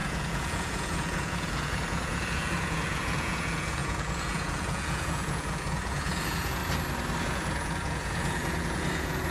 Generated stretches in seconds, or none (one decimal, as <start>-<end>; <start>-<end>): 0.0-6.6; 7.2-9.3